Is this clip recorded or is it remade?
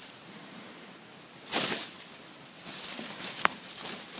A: recorded